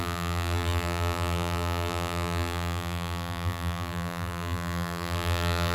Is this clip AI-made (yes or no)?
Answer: yes